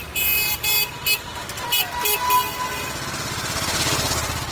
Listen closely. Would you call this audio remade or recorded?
recorded